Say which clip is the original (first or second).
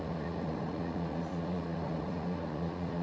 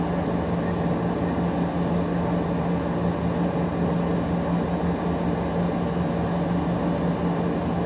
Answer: second